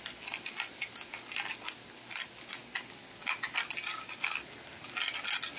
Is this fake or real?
real